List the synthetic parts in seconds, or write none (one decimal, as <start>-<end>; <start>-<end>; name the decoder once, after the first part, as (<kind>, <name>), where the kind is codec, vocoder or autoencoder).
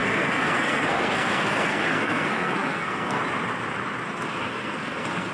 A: 0.0-3.2 (codec, SNAC); 4.3-5.3